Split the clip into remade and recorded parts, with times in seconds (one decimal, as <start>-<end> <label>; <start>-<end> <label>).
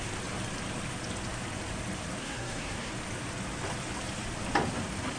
0.0-2.2 recorded; 2.2-2.9 remade; 2.9-5.2 recorded